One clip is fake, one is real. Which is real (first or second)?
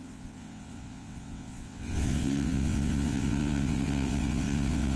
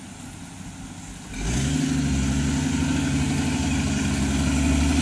second